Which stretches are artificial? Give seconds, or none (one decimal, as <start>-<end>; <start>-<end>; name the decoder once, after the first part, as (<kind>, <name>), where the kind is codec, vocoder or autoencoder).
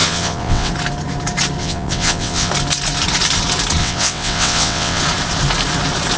0.0-0.7 (vocoder, WaveNeXt); 1.6-2.5; 3.8-5.0